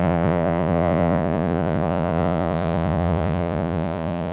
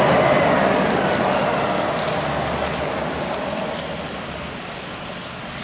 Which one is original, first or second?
second